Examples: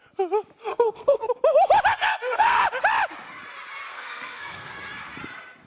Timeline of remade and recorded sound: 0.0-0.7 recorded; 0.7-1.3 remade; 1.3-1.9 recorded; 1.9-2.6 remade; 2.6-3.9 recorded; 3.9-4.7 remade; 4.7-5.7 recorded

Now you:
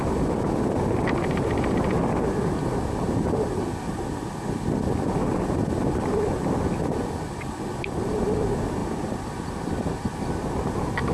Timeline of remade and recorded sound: 0.0-11.1 recorded

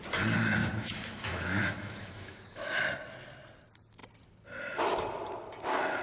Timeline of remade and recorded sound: 0.0-0.6 recorded; 0.6-2.8 remade; 2.8-6.0 recorded

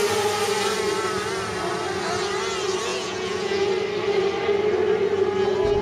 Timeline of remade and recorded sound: 0.0-2.9 recorded; 2.9-3.7 remade; 3.7-5.8 recorded

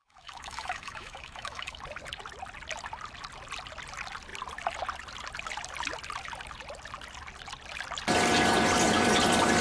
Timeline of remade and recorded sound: 0.0-1.8 remade; 1.8-9.6 recorded